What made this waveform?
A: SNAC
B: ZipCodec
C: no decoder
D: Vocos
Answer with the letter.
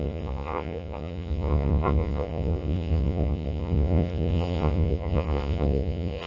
D